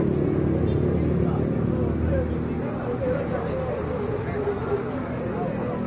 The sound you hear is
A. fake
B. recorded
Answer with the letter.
B